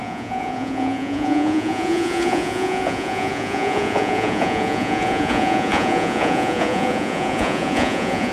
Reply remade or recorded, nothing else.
remade